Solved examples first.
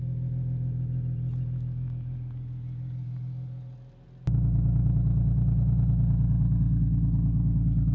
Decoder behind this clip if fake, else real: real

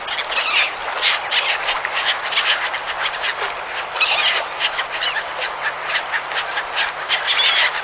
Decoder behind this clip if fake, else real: real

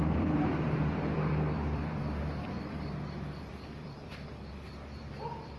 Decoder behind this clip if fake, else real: fake, vocoder, BigVGAN v2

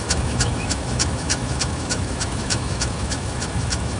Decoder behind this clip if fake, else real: fake, autoencoder, DAC-VAE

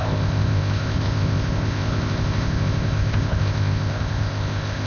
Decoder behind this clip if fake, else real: fake, codec, ZipCodec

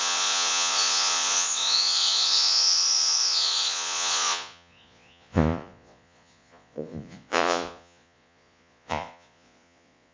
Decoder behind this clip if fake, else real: fake, vocoder, Vocos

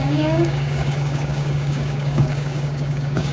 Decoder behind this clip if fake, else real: fake, codec, DAC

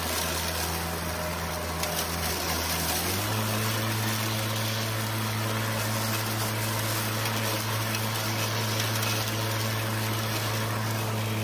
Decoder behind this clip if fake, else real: real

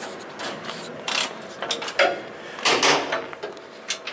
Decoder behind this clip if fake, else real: real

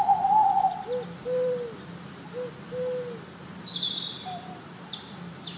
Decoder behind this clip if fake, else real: fake, vocoder, BigVGAN v2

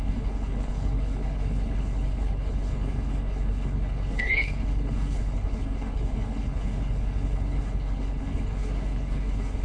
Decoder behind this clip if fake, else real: fake, codec, HILCodec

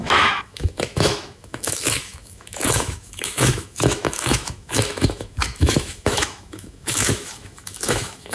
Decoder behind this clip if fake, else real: fake, autoencoder, DAC-VAE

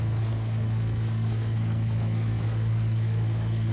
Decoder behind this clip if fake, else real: fake, codec, SNAC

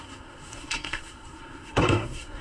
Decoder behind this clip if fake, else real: fake, codec, SNAC